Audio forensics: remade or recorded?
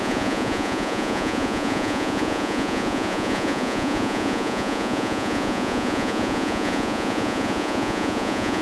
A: remade